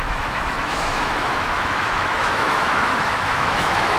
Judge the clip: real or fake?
fake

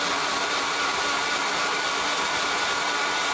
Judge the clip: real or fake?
real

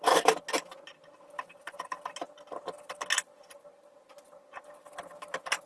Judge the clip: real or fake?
real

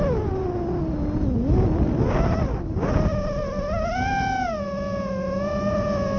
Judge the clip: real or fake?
real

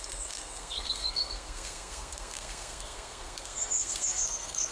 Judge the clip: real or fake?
fake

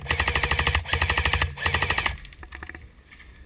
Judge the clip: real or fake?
real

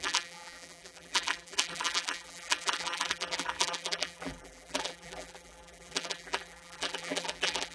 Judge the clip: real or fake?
fake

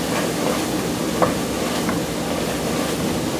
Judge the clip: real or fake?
real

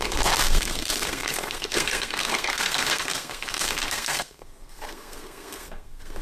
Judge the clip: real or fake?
fake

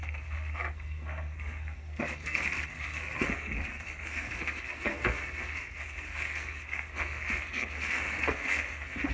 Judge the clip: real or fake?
fake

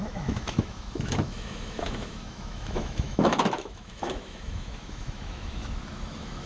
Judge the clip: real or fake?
fake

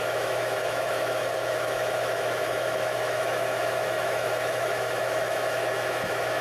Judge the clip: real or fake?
fake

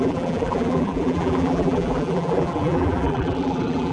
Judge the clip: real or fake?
fake